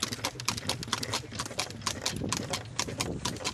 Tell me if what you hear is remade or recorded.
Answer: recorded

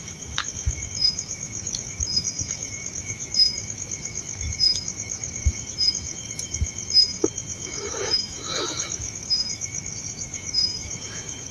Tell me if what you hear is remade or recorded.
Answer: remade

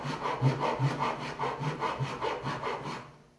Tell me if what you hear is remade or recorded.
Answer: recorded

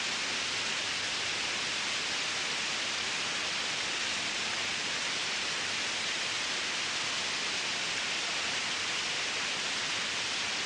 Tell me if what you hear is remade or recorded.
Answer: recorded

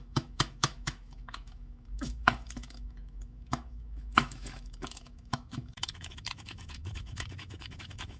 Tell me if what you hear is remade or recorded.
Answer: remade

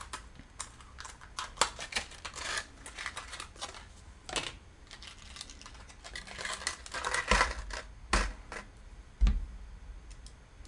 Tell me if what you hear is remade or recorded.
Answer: recorded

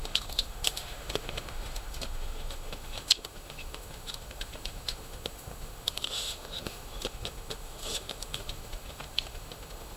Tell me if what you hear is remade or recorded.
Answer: remade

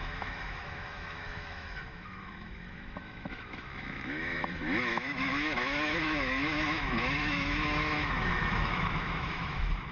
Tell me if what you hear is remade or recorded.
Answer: remade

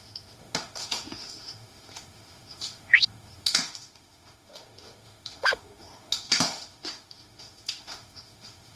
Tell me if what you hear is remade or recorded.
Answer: remade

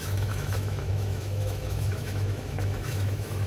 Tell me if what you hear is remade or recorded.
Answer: remade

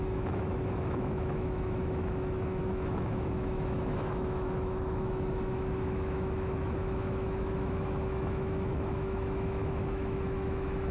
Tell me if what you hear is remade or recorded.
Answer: remade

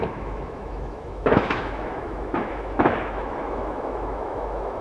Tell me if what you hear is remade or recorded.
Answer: remade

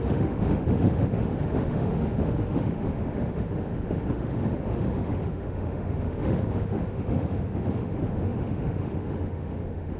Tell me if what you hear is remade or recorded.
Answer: remade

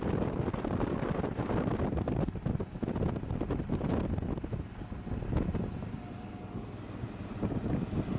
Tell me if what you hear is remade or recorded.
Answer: recorded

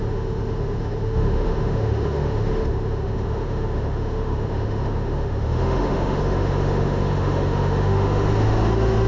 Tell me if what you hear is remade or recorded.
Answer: remade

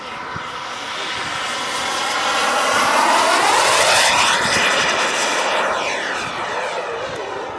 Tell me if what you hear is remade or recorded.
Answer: recorded